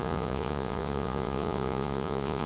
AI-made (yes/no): yes